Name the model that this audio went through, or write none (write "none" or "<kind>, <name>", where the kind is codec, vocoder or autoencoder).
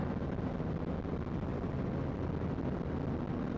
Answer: none